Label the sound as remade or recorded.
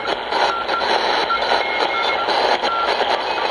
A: recorded